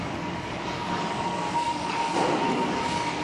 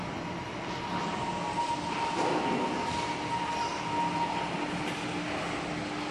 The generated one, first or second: first